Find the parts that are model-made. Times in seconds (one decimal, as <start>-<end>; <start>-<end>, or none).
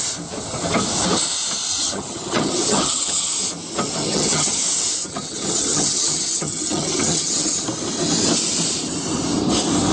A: 1.7-3.3; 4.0-4.6; 5.0-7.6